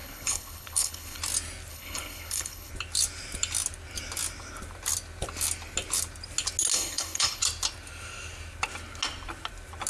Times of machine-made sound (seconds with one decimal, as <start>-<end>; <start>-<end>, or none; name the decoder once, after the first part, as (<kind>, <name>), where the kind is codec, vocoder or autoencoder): 0.0-1.2 (codec, HILCodec); 1.7-2.7; 6.7-7.4